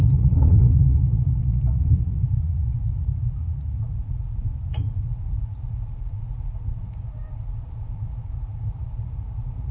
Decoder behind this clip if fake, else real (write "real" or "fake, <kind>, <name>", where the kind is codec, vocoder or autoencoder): fake, vocoder, Vocos